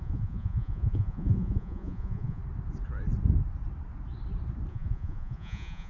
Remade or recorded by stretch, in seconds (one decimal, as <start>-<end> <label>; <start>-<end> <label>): 0.0-2.4 remade; 2.4-4.7 recorded; 4.7-5.9 remade